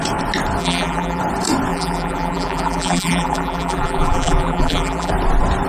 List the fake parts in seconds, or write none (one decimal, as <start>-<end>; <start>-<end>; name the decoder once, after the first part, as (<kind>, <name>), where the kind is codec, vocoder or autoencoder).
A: 0.6-1.2 (vocoder, BigVGAN v2); 1.7-5.1

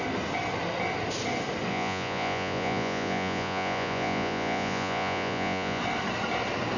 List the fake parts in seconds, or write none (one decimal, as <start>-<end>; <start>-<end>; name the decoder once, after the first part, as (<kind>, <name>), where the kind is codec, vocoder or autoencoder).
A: 1.7-5.8 (vocoder, Vocos)